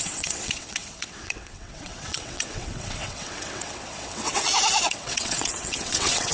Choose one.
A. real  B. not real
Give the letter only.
B